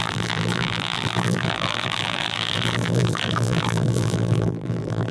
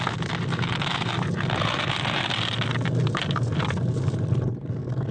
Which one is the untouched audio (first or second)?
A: second